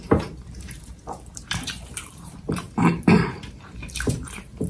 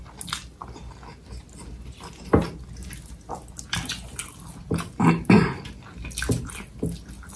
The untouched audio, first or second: second